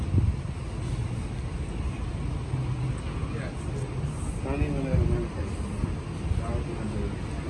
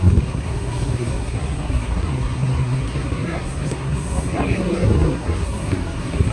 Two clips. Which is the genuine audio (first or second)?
first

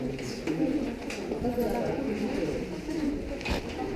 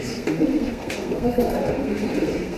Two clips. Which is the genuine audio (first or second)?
first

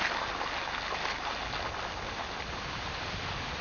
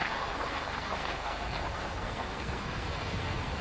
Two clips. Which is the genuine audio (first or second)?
first